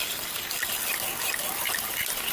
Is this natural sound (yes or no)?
yes